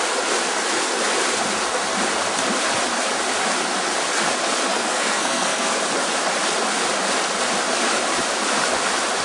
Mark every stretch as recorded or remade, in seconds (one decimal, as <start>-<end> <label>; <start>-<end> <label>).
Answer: 0.0-4.7 recorded; 4.7-5.8 remade; 5.8-9.2 recorded

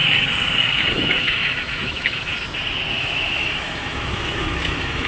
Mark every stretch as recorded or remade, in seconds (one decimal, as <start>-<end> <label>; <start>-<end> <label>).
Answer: 0.0-0.9 recorded; 0.9-2.3 remade; 2.3-2.9 recorded; 2.9-5.1 remade

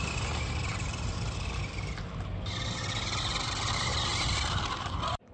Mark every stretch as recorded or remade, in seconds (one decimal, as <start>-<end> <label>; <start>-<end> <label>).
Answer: 0.0-0.7 recorded; 0.7-2.0 remade; 2.0-3.9 recorded; 3.9-5.3 remade

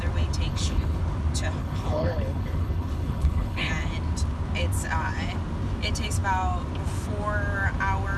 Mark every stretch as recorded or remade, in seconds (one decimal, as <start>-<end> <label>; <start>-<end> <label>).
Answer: 0.0-0.5 recorded; 0.5-1.0 remade; 1.0-1.6 recorded; 1.6-3.7 remade; 3.7-8.2 recorded

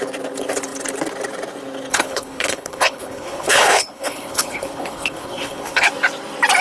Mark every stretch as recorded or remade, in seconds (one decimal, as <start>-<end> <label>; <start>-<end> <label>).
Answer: 0.0-1.9 recorded; 1.9-5.9 remade; 5.9-6.6 recorded

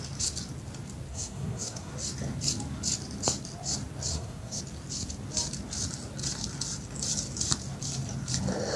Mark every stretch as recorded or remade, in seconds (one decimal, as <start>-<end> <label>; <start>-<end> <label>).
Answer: 0.0-1.1 recorded; 1.1-1.9 remade; 1.9-4.1 recorded; 4.1-4.6 remade; 4.6-8.8 recorded